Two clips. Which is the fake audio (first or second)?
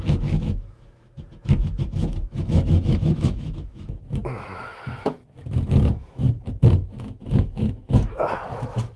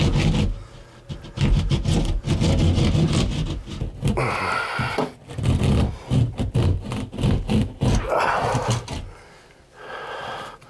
first